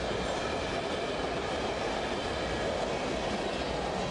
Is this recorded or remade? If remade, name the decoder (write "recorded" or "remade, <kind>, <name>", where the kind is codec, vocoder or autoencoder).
recorded